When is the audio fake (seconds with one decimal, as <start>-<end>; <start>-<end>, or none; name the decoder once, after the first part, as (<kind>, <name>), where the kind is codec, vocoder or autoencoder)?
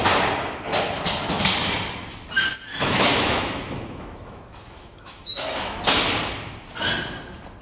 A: 2.7-5.8 (autoencoder, DAC-VAE)